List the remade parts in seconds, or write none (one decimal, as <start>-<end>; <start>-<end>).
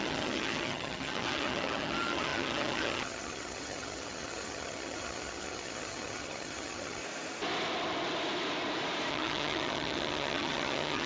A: 0.0-7.0; 9.1-11.1